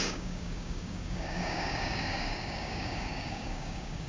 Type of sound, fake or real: fake